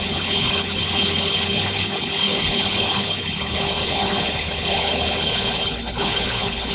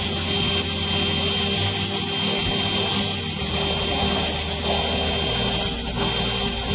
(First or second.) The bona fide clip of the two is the second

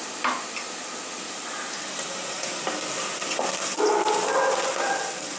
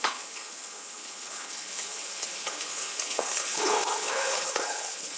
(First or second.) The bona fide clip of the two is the first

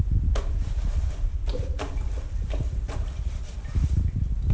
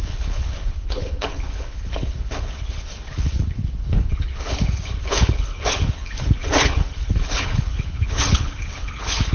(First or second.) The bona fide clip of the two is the first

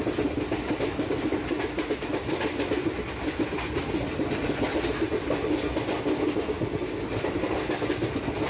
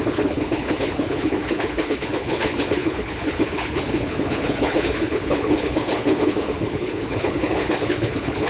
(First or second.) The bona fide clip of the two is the first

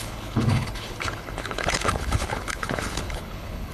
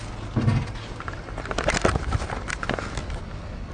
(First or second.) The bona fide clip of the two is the second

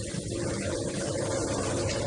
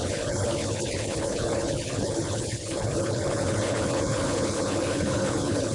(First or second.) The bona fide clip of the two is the first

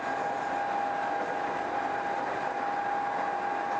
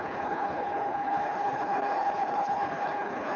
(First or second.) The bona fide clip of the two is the first